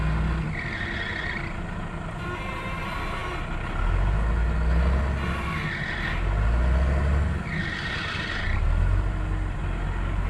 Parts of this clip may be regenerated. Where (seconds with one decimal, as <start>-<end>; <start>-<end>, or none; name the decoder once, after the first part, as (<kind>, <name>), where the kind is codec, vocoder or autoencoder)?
none